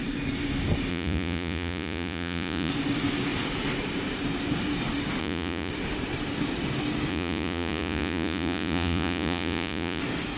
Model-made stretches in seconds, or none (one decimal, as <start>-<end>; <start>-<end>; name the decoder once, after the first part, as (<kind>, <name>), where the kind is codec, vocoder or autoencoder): 0.9-2.7 (vocoder, Vocos); 5.2-5.7; 7.1-10.0